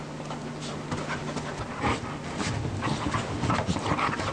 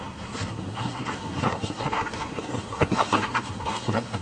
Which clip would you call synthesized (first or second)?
second